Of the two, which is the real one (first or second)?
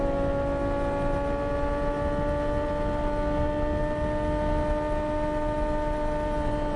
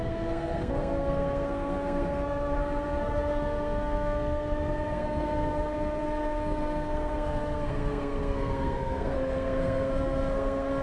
first